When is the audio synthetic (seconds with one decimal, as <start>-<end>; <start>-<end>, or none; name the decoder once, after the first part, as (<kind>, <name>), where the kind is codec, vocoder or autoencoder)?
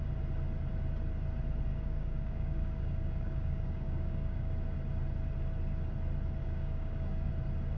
1.7-4.5 (codec, DAC); 6.4-7.3